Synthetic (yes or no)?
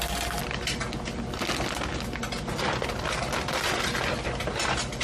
no